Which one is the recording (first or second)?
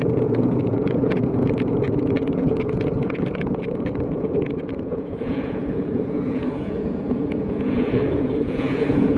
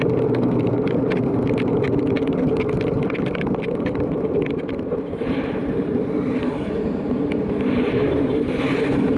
second